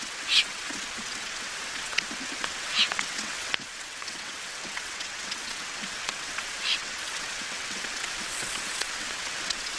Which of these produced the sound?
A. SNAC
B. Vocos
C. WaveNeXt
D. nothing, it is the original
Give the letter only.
C